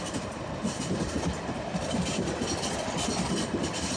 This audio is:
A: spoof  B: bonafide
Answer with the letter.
A